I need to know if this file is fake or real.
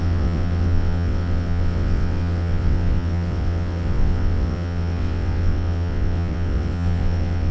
fake